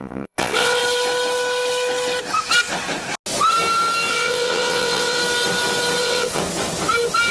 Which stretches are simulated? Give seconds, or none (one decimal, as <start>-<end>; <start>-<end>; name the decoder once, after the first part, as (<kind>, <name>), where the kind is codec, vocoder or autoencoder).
0.0-0.8 (vocoder, WaveNeXt); 4.1-5.2; 6.0-6.4

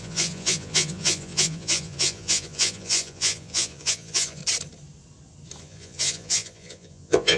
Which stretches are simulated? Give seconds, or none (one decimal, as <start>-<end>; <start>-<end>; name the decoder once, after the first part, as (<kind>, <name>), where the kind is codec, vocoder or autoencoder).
0.0-4.4 (vocoder, Vocos); 5.6-7.4

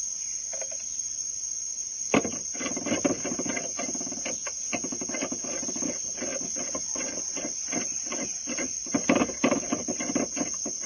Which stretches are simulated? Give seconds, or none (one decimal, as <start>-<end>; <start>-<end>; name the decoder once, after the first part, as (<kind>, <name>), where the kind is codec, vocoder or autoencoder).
none

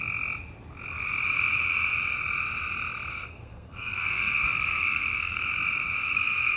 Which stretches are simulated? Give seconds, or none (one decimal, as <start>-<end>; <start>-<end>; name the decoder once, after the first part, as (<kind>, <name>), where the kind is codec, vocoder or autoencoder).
3.1-5.4 (codec, SNAC); 6.0-6.6

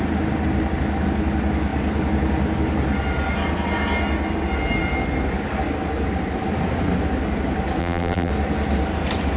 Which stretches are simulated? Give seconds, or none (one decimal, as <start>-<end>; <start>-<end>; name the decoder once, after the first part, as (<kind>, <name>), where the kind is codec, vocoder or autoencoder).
7.8-8.3 (vocoder, BigVGAN v2)

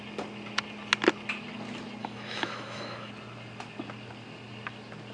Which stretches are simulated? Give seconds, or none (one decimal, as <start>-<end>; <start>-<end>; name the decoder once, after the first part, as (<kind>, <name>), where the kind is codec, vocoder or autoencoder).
2.0-3.1 (autoencoder, DAC-VAE)

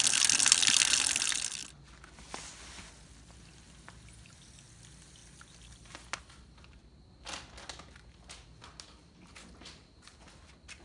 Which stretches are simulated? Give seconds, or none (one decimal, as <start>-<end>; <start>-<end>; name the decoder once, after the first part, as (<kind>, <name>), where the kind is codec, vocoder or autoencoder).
none

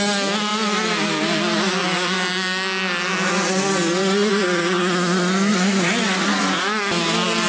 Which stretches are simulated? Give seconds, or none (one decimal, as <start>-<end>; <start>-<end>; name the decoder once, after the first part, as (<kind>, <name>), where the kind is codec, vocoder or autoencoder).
5.5-6.8 (vocoder, Vocos)